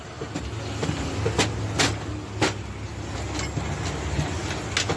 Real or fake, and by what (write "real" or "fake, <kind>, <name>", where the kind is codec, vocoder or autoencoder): real